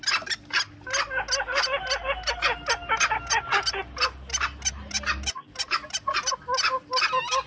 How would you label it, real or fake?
real